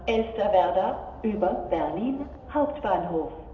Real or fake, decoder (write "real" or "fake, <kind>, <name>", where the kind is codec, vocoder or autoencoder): real